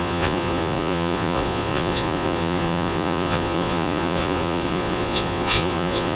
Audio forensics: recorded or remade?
remade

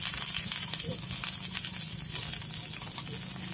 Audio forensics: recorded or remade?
recorded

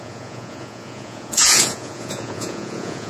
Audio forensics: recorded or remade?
remade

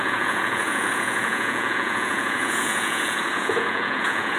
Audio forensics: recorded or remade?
remade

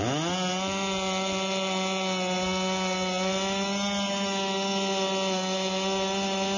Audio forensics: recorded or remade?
recorded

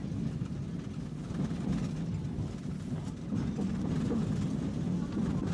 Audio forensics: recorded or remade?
recorded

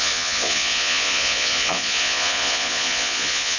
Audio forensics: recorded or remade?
remade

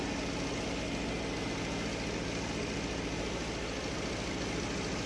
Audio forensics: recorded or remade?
recorded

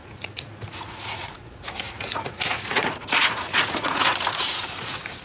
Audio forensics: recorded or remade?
remade